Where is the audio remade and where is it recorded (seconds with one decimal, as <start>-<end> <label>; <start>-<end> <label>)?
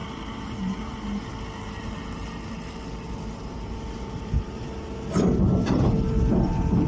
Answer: 0.0-2.8 recorded; 2.8-6.9 remade